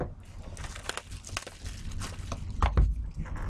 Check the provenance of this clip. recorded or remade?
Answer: recorded